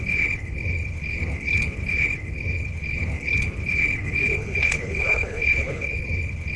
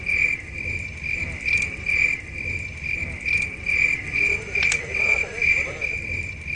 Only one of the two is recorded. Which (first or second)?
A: second